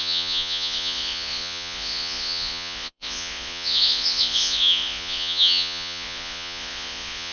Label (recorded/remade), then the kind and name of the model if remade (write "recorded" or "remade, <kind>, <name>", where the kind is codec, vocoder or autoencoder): remade, vocoder, Vocos